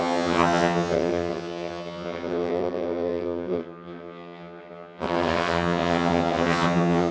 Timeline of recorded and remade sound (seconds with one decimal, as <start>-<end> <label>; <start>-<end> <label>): 0.0-7.1 remade